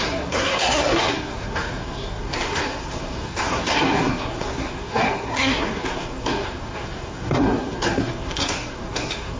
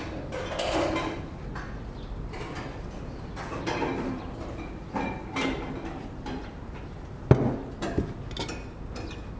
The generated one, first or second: first